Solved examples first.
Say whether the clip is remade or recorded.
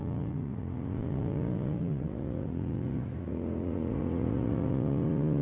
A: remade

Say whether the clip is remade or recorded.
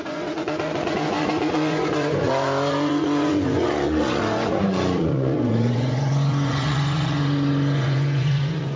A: remade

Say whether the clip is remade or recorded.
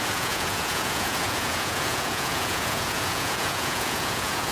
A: remade